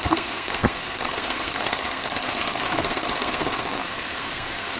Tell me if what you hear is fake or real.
fake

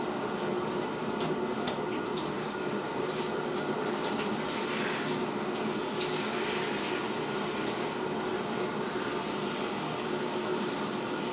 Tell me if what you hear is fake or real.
real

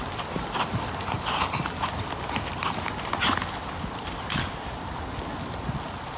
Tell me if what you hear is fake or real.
real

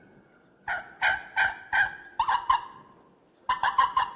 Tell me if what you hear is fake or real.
real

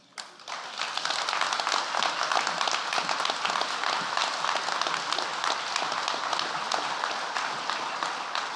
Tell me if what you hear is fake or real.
real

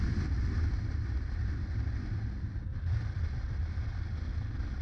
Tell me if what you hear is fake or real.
real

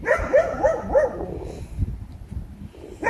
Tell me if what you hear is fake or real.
real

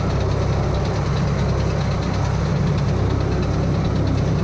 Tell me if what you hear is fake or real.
real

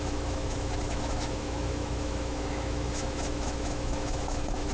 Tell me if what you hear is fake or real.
fake